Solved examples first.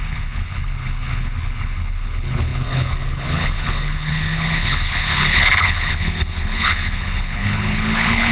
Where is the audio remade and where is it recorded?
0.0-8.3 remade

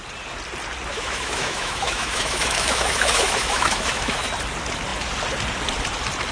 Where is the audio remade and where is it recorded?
0.0-0.9 recorded; 0.9-4.3 remade; 4.3-6.3 recorded

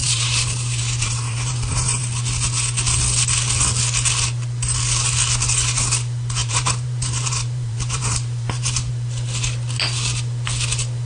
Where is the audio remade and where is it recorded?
0.0-2.0 remade; 2.0-6.4 recorded; 6.4-8.9 remade; 8.9-11.1 recorded